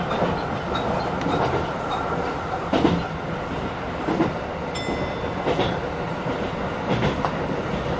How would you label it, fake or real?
real